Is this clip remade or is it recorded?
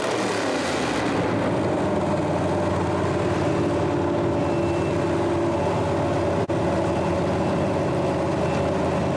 recorded